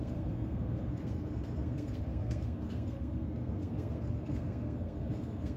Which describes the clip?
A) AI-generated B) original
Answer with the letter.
A